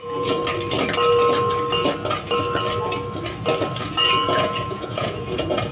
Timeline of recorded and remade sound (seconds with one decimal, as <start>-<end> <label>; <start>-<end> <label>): 0.0-0.4 remade; 0.4-3.8 recorded; 3.8-5.7 remade